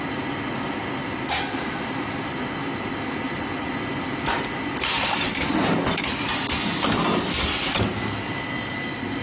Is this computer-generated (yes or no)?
no